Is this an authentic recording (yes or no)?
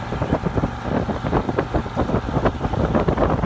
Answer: yes